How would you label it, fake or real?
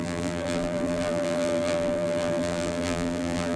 fake